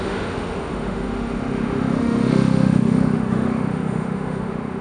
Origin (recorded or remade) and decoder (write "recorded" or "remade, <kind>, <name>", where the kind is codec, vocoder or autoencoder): remade, autoencoder, DAC-VAE